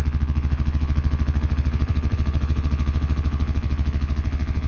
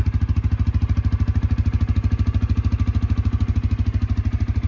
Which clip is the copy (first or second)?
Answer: first